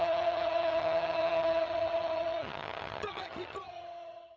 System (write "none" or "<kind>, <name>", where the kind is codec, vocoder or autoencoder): vocoder, HiFi-GAN